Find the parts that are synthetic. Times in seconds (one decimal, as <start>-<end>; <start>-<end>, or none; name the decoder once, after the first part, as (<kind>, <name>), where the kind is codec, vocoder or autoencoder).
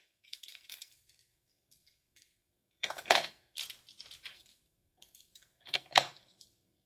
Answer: 0.0-3.6 (codec, SNAC); 4.3-6.9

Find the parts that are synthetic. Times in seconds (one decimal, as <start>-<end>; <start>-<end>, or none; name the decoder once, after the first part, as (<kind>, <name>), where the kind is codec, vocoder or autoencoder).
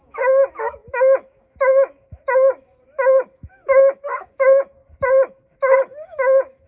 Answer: 0.0-4.8 (autoencoder, DAC-VAE); 5.5-6.7